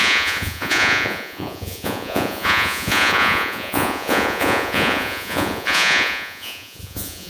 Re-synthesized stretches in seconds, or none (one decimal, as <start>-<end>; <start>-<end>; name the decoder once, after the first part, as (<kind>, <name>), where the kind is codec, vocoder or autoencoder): 0.0-7.3 (vocoder, Vocos)